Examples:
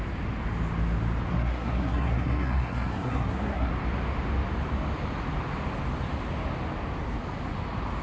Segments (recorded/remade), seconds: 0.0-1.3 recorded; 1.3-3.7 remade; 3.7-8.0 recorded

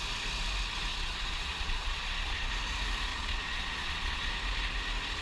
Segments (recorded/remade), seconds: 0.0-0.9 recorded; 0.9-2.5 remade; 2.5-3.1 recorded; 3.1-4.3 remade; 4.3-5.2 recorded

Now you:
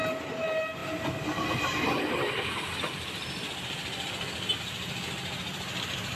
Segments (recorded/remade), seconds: 0.0-0.8 recorded; 0.8-4.5 remade; 4.5-6.2 recorded